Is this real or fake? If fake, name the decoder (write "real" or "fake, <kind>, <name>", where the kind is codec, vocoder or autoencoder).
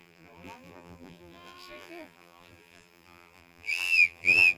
fake, vocoder, BigVGAN v2